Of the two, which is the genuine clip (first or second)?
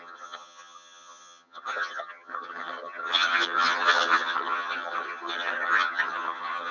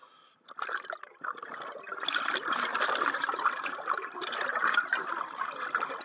second